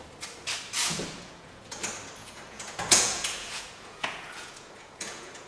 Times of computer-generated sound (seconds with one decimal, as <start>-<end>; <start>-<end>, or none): 0.8-1.8; 2.2-5.5